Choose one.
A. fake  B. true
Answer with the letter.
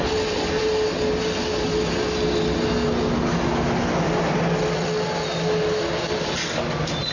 B